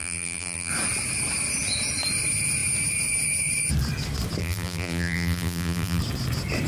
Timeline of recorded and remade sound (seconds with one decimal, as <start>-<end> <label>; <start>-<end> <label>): 0.0-0.7 remade; 0.7-4.4 recorded; 4.4-6.0 remade; 6.0-6.7 recorded